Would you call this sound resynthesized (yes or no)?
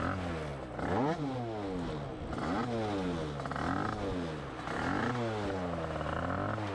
no